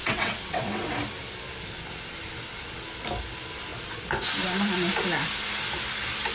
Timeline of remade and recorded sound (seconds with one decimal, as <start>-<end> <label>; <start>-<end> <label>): 0.0-0.9 remade; 0.9-6.3 recorded